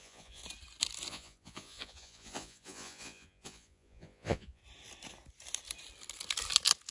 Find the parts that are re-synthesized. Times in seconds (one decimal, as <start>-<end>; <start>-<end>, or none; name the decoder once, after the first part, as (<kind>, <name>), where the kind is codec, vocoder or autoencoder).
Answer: 0.0-0.4 (vocoder, Vocos); 1.1-4.6